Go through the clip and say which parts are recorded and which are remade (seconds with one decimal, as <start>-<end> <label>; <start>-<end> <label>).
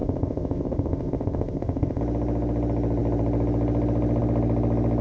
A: 0.0-2.0 remade; 2.0-5.0 recorded